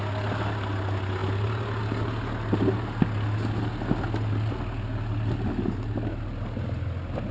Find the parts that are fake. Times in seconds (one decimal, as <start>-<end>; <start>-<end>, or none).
none